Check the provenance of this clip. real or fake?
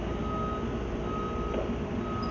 real